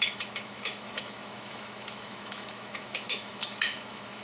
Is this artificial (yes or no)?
yes